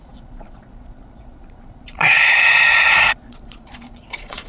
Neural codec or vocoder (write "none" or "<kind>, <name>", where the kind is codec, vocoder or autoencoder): vocoder, Vocos